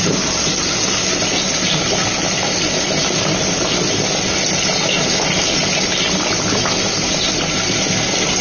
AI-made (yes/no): no